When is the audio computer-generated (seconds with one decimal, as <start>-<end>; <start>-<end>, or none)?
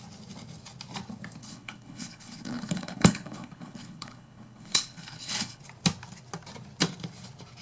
1.4-5.6